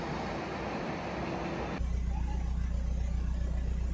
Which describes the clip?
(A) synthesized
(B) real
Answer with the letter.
B